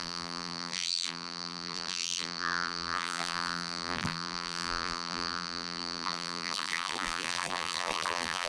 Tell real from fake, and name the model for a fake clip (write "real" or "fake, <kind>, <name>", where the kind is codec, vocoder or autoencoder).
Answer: fake, vocoder, BigVGAN v2